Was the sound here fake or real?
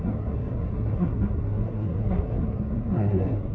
fake